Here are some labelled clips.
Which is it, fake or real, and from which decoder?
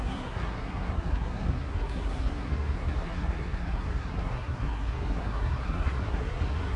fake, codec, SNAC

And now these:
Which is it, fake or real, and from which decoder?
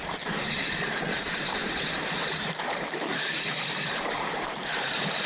fake, vocoder, BigVGAN v2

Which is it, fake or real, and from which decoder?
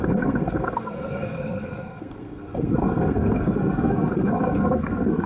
fake, codec, SNAC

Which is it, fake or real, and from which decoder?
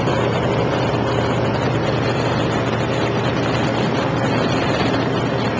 real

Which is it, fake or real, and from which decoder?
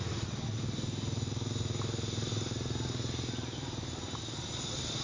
real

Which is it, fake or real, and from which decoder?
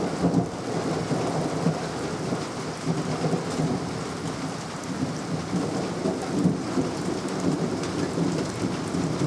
real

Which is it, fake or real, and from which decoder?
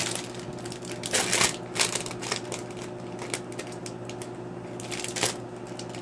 real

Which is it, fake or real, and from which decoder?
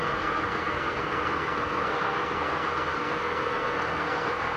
fake, codec, SNAC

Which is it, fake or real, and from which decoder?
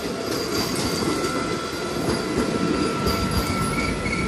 real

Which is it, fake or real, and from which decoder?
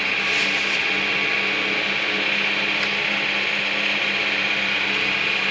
real